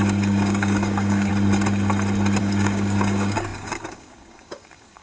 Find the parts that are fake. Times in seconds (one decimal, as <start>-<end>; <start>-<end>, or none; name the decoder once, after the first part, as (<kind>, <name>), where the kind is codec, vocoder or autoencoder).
0.0-1.3 (codec, DAC); 2.4-5.0